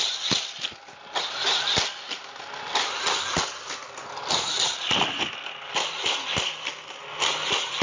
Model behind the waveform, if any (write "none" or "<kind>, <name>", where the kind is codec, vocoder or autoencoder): none